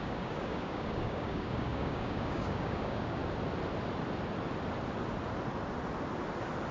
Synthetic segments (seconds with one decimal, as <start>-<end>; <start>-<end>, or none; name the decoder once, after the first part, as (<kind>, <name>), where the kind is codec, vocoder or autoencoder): 0.0-3.2 (codec, DAC)